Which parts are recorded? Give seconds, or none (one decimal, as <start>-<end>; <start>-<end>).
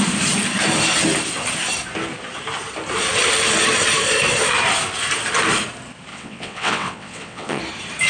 0.0-6.1; 7.6-8.1